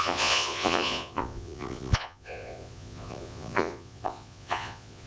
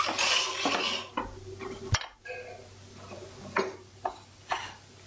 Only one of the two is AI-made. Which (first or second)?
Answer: first